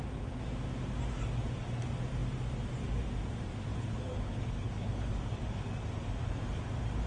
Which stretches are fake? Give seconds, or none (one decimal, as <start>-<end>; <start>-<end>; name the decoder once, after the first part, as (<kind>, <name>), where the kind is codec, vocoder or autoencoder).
3.7-5.1 (codec, HILCodec)